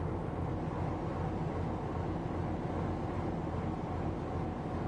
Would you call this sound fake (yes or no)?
no